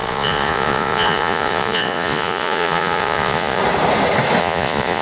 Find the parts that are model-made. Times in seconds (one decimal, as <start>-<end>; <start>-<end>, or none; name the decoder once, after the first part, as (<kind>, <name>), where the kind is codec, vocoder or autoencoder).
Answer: 0.0-3.6 (vocoder, Vocos); 4.4-5.0